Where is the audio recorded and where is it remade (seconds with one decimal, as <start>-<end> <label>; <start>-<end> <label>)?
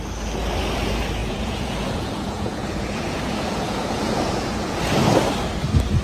0.0-1.2 recorded; 1.2-4.8 remade; 4.8-6.0 recorded